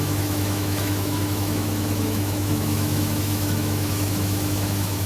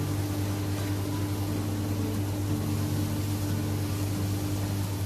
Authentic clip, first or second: second